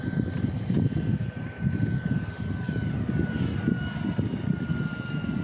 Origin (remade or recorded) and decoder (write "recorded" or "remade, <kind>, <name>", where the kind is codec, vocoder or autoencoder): recorded